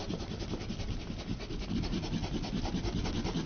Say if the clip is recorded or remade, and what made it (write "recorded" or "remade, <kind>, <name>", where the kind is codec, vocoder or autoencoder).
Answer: recorded